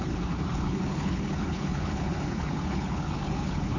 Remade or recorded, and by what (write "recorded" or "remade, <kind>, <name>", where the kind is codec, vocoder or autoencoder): remade, codec, HILCodec